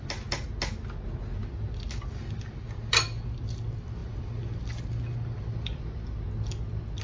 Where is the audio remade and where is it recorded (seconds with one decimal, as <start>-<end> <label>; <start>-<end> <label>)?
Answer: 0.0-7.0 recorded